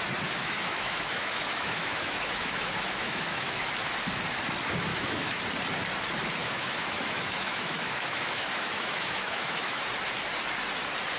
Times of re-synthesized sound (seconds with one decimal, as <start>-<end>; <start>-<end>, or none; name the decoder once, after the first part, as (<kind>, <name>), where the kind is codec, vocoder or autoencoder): 0.4-3.7 (autoencoder, DAC-VAE); 4.9-5.4; 6.4-9.8